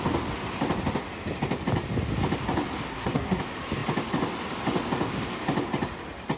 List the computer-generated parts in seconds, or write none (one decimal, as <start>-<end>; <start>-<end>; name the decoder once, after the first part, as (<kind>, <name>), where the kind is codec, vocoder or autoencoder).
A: 2.9-3.4 (codec, SNAC)